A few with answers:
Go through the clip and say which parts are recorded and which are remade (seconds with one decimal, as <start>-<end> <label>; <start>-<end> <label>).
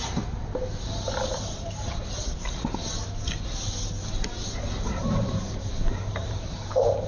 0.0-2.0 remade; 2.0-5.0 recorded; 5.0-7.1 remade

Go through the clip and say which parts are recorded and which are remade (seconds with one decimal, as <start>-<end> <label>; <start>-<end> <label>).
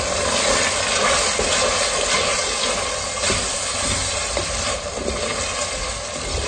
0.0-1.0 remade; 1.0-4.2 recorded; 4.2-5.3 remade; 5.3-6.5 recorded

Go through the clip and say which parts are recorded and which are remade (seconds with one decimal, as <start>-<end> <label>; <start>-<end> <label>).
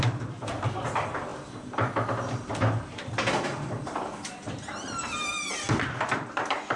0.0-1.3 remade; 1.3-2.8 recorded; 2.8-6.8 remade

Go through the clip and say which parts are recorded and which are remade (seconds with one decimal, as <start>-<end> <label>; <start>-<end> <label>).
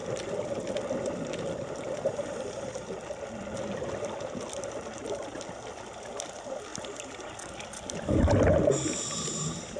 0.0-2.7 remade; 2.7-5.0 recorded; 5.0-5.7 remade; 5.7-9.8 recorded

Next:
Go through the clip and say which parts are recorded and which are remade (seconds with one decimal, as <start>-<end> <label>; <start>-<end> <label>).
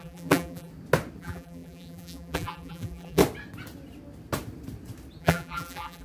0.0-0.7 remade; 0.7-1.2 recorded; 1.2-3.2 remade; 3.2-5.2 recorded; 5.2-6.0 remade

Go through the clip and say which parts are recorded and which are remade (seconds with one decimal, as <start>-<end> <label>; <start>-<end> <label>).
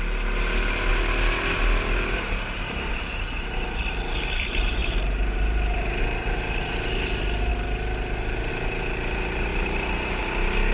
0.0-0.9 remade; 0.9-2.9 recorded; 2.9-7.5 remade; 7.5-8.5 recorded; 8.5-10.7 remade